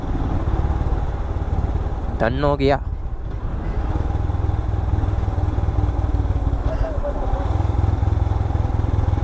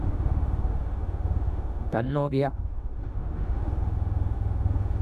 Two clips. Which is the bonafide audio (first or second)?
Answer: first